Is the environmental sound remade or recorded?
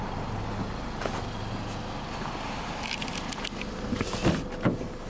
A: recorded